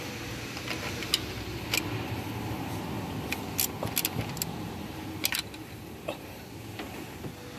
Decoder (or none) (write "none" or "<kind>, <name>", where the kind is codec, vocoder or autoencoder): none